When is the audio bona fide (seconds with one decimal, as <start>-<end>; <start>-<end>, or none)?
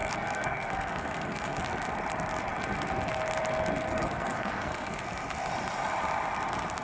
1.6-3.9; 5.0-6.8